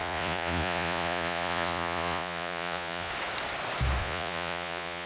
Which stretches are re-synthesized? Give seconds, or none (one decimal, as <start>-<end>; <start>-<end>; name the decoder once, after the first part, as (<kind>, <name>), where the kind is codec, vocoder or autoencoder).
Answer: 0.0-3.1 (vocoder, Vocos); 4.0-5.1